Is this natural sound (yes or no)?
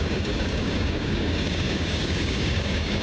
no